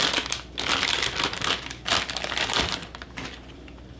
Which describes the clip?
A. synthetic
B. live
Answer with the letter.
B